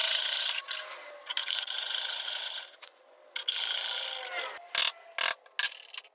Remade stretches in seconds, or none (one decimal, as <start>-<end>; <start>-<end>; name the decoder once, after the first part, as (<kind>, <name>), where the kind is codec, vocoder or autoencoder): 0.0-0.6 (vocoder, Vocos); 1.4-3.0